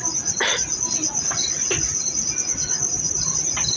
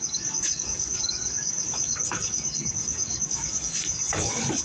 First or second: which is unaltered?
first